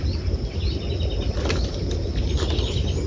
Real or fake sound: real